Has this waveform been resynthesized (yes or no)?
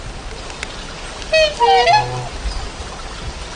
no